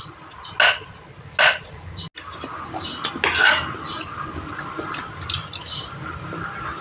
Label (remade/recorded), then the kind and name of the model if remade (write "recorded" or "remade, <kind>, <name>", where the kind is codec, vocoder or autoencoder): recorded